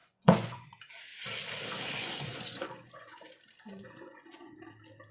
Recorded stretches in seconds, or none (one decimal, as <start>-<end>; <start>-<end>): 0.7-2.0; 3.3-3.7; 4.5-5.1